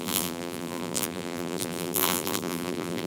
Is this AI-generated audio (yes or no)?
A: yes